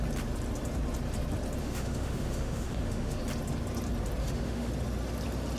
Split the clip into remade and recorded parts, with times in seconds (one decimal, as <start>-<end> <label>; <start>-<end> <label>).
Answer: 0.0-1.6 recorded; 1.6-3.2 remade; 3.2-4.2 recorded; 4.2-4.7 remade; 4.7-5.6 recorded